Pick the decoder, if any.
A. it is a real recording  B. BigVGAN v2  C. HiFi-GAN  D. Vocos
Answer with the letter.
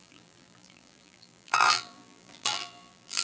B